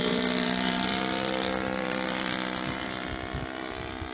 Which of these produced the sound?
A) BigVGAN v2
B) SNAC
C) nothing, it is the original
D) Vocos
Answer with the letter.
A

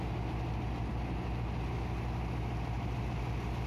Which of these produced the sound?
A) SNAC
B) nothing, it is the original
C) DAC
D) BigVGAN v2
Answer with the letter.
B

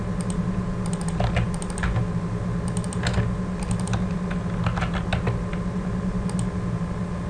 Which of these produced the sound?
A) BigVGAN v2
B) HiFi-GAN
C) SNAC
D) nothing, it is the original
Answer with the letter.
D